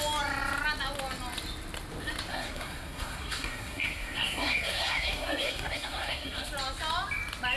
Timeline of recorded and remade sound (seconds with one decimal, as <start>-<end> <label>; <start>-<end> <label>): 0.0-2.3 recorded; 2.3-6.5 remade; 6.5-7.6 recorded